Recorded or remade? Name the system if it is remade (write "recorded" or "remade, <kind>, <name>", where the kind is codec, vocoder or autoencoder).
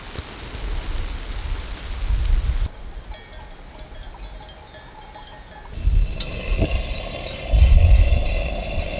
recorded